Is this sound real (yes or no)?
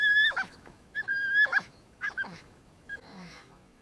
no